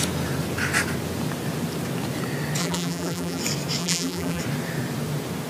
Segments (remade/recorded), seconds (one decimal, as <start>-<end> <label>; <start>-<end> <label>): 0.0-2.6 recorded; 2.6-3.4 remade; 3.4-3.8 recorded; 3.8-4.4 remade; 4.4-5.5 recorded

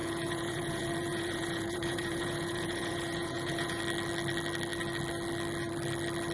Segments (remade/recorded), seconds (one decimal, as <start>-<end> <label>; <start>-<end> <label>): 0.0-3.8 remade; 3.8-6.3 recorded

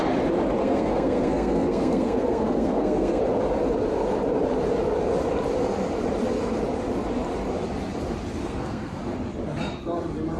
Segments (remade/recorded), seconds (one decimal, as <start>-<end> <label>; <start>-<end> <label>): 0.0-0.6 recorded; 0.6-3.2 remade; 3.2-8.4 recorded; 8.4-9.0 remade; 9.0-10.4 recorded

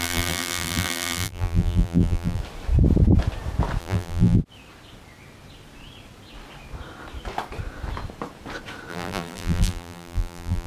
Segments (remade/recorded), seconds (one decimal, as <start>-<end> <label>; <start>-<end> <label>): 0.0-2.4 remade; 2.4-3.8 recorded; 3.8-4.4 remade; 4.4-8.9 recorded; 8.9-10.7 remade

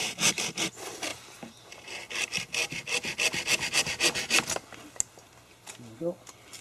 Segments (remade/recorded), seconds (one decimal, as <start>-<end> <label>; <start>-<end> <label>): 0.0-6.6 recorded

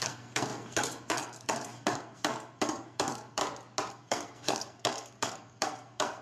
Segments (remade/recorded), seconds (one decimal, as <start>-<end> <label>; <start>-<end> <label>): 0.0-3.4 remade; 3.4-3.9 recorded; 3.9-6.2 remade

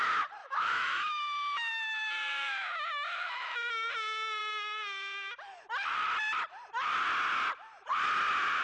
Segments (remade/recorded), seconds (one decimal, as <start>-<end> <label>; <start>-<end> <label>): 0.0-0.4 recorded; 0.4-3.9 remade; 3.9-8.6 recorded